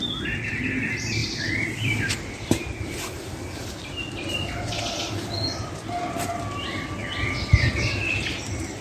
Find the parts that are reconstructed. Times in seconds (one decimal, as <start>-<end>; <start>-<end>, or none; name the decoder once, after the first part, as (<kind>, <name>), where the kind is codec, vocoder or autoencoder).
1.2-3.9 (vocoder, BigVGAN v2); 7.0-7.9